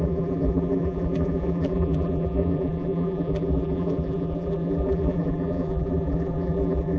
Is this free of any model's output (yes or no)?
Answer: no